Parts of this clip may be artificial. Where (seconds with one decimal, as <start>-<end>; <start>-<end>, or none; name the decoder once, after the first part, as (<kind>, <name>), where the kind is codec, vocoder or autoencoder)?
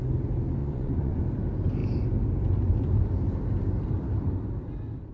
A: 0.6-1.2 (vocoder, Vocos)